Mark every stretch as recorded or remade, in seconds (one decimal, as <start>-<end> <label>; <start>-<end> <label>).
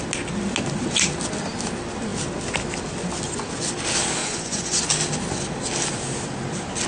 0.0-4.2 recorded; 4.2-4.8 remade; 4.8-6.9 recorded